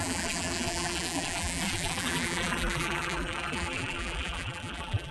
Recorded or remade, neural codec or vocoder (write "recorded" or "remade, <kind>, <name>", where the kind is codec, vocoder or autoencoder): remade, vocoder, BigVGAN v2